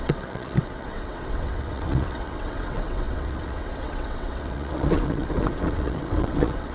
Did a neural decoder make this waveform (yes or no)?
yes